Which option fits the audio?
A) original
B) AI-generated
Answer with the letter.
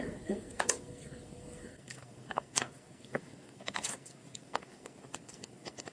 B